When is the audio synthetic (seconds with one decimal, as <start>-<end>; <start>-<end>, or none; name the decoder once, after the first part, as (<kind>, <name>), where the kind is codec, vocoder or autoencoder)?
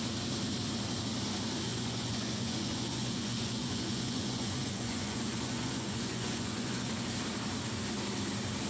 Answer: 1.7-6.9 (vocoder, Vocos)